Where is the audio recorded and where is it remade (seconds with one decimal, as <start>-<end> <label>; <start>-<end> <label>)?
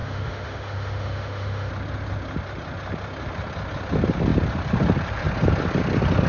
0.0-1.7 remade; 1.7-6.3 recorded